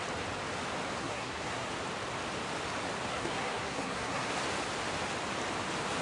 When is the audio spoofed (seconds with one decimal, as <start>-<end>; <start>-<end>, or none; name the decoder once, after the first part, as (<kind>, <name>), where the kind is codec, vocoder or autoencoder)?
1.0-1.7 (codec, SNAC); 3.1-4.3